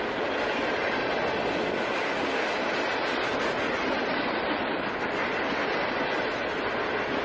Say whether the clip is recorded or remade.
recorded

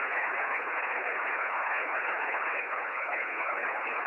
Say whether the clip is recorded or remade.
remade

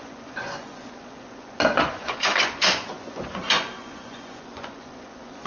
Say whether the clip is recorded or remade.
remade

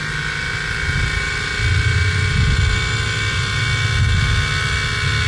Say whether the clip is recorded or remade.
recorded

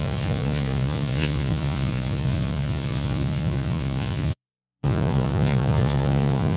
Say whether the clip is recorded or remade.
remade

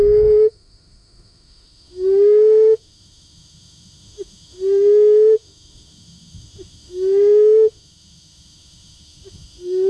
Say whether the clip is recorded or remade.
remade